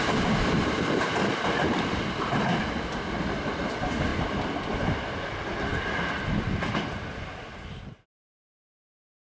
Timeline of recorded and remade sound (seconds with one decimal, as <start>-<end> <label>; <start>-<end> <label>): 0.0-2.5 remade; 2.5-3.2 recorded; 3.2-9.3 remade